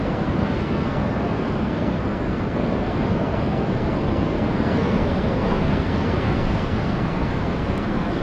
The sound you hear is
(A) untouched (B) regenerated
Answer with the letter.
B